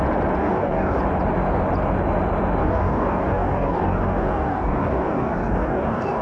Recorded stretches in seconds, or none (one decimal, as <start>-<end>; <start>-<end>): 0.0-0.4; 1.0-2.6